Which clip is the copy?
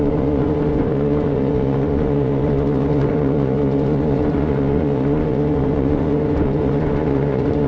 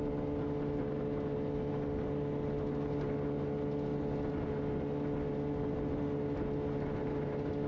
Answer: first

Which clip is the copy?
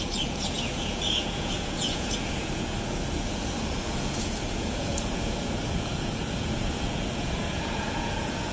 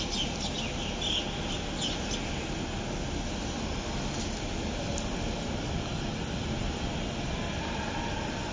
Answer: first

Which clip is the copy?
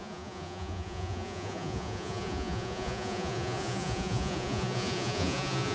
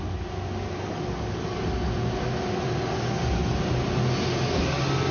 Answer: first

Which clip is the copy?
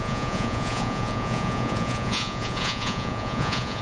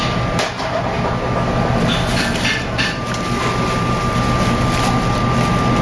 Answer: first